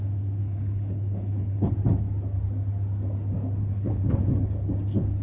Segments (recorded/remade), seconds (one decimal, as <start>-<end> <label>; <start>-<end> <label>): 0.0-0.4 recorded; 0.4-1.7 remade; 1.7-3.6 recorded; 3.6-4.2 remade; 4.2-5.2 recorded